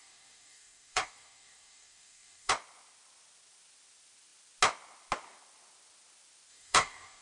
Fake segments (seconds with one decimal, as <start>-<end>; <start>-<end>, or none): 0.0-2.5; 6.5-7.2